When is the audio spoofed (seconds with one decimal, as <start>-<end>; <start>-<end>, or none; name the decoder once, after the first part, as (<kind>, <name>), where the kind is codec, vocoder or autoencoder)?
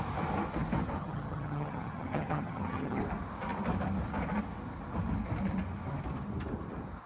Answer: 1.0-3.0 (vocoder, HiFi-GAN)